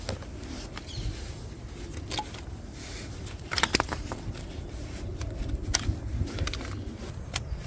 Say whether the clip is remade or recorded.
recorded